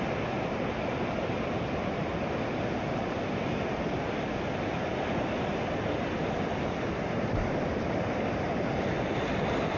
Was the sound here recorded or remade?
recorded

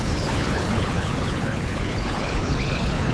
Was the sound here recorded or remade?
remade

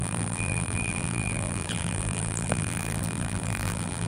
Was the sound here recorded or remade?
remade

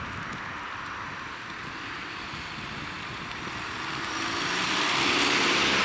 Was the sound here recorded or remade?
recorded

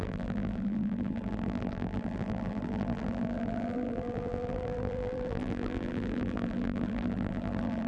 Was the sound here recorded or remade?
remade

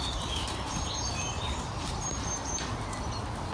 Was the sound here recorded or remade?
recorded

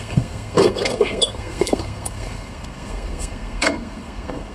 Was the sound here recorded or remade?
remade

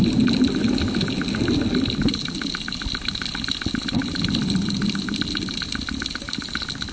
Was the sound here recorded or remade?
recorded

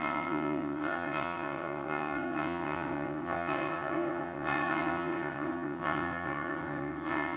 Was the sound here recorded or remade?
remade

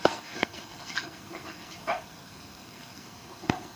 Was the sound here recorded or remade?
remade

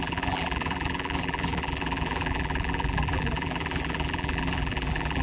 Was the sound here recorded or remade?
remade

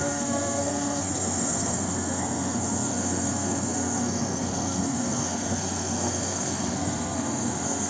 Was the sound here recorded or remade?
remade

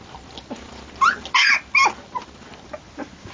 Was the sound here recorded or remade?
recorded